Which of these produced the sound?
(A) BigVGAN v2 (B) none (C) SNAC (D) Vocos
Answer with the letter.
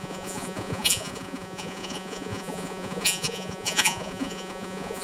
D